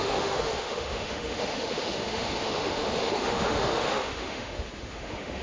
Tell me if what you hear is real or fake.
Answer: fake